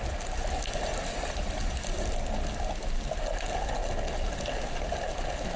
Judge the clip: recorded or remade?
recorded